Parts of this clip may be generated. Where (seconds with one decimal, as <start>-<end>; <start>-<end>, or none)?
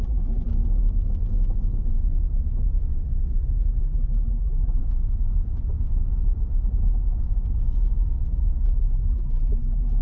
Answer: 0.0-0.5; 3.8-4.8; 8.8-10.0